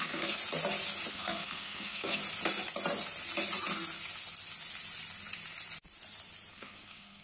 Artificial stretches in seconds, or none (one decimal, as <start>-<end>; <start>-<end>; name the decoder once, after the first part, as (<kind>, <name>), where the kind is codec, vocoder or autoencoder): 0.0-0.4 (codec, SNAC); 1.1-2.2; 6.5-7.2